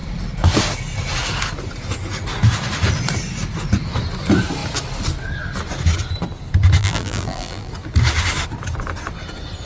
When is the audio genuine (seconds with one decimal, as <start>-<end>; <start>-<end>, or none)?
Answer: 0.0-6.8; 7.7-9.7